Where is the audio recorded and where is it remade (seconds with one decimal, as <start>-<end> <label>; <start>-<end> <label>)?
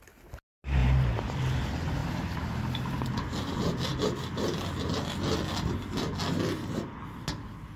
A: 0.0-0.8 recorded; 0.8-1.4 remade; 1.4-2.0 recorded; 2.0-3.1 remade; 3.1-7.8 recorded